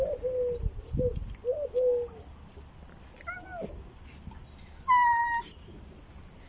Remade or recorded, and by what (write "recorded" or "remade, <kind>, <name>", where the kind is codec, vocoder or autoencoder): recorded